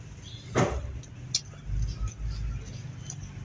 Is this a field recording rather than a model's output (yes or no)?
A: yes